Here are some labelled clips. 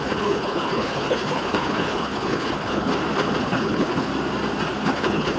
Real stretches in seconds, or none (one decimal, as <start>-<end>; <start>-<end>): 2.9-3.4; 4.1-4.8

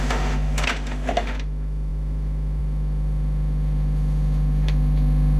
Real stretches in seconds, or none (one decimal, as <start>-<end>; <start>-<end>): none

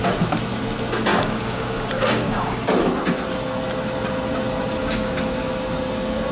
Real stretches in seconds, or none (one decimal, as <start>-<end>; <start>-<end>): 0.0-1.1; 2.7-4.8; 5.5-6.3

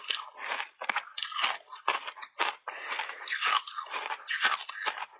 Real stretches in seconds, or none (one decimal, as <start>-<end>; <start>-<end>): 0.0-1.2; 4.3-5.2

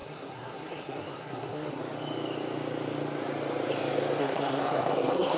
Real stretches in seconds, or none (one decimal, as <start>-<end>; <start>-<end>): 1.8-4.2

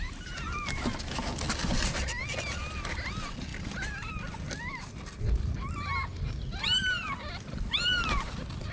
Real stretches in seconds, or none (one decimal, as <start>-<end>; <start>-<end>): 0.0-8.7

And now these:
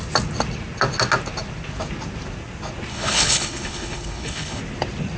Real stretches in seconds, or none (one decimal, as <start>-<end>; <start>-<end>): 0.0-2.9; 4.6-5.2